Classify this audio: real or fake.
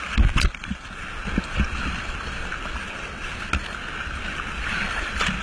real